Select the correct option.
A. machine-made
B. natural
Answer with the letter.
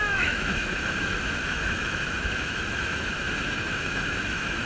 A